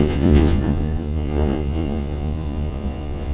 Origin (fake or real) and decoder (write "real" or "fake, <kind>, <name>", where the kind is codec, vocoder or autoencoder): fake, vocoder, Vocos